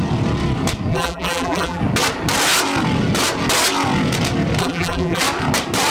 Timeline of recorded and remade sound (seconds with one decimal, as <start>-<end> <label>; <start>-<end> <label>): 0.0-0.9 recorded; 0.9-1.8 remade; 1.8-4.6 recorded; 4.6-5.2 remade; 5.2-5.9 recorded